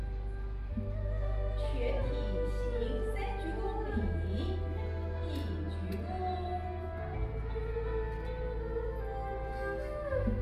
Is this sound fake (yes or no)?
no